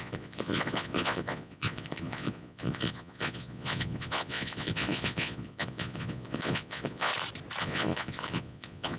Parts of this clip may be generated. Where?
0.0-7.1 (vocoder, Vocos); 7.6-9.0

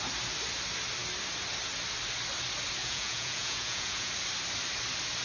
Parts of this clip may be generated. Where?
2.8-4.1 (vocoder, Vocos)

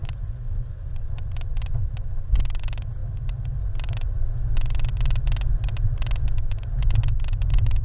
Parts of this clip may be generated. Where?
0.0-0.9 (vocoder, Vocos)

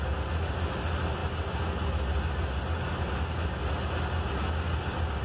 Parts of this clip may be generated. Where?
none

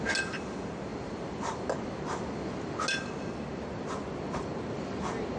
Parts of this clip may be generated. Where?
none

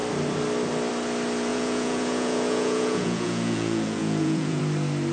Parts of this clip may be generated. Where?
1.5-4.6 (vocoder, Vocos)

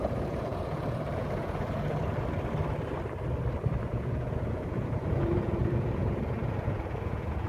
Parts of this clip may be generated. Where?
0.0-2.0 (vocoder, Vocos); 3.9-7.5